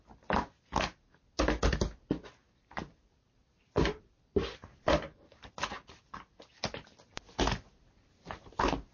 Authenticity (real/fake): real